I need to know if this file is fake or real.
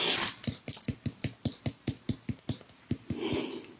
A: real